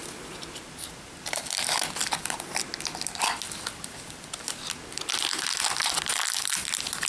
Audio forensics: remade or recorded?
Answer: recorded